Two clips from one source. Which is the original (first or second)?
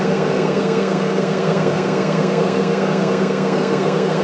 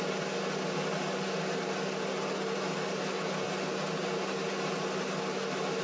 second